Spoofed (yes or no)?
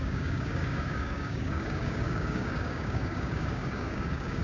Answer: yes